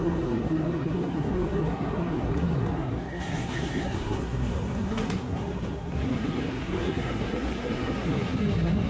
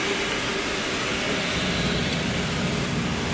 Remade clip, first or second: first